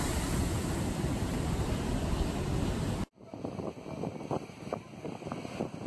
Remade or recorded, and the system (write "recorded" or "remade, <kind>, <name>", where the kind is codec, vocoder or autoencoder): recorded